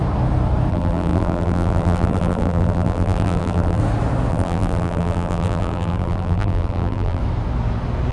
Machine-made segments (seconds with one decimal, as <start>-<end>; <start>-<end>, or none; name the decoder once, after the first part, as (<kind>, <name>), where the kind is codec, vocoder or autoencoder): 0.7-3.8 (vocoder, BigVGAN v2); 4.3-7.2

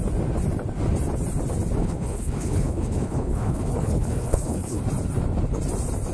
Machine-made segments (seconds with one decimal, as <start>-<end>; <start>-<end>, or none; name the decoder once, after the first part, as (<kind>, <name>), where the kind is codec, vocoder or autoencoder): 1.8-4.8 (codec, HILCodec)

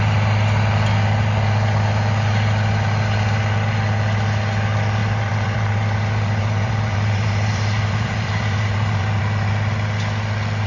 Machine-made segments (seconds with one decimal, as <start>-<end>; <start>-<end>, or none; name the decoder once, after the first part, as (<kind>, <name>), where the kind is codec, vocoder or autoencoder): 5.0-9.2 (vocoder, BigVGAN v2)

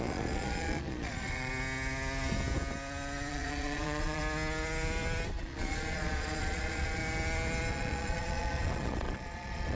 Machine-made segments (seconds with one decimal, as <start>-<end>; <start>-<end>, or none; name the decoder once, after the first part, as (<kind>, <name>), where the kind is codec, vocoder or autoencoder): 0.0-1.5 (vocoder, Vocos); 3.3-4.2; 5.4-7.0; 7.7-9.8

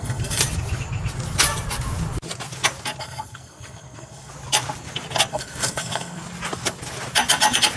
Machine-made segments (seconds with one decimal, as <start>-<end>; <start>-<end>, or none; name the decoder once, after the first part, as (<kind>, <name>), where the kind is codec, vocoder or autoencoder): 0.0-0.4 (codec, SNAC); 3.0-4.3; 5.3-6.2